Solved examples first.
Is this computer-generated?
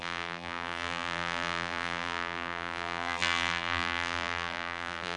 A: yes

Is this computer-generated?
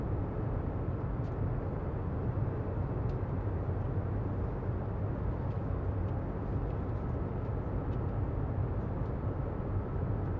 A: no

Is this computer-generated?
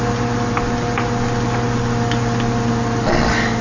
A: no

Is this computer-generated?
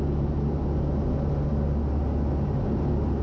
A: no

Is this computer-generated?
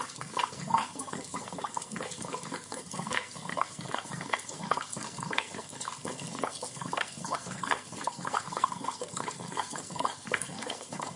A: yes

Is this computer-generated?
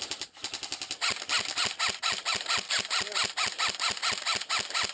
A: no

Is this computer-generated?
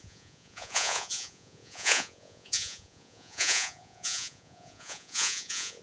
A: yes